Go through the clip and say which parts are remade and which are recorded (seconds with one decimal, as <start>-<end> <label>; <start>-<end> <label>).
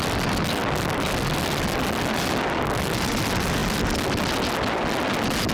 0.0-5.5 recorded